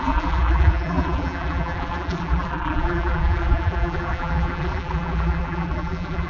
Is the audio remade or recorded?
remade